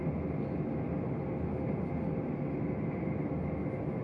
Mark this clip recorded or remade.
recorded